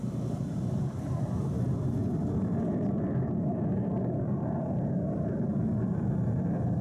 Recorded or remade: remade